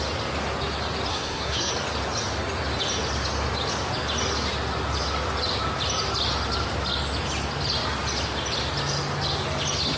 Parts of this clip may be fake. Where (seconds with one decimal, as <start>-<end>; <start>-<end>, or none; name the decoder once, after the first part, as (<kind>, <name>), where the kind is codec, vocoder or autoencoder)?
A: 1.1-1.7 (codec, SNAC)